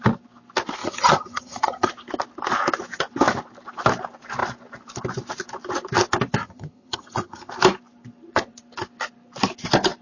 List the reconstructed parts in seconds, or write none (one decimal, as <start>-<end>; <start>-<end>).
0.8-1.9; 6.4-7.5